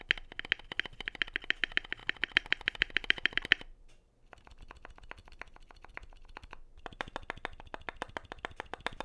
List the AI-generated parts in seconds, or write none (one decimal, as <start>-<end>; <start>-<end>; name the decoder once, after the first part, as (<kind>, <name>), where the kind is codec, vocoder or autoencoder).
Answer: 2.0-4.6 (vocoder, BigVGAN v2); 5.2-5.9